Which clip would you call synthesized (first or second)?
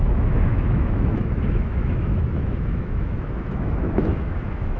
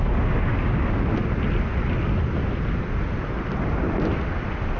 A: first